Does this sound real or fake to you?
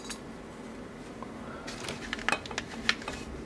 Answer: real